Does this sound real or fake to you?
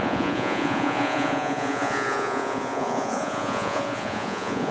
fake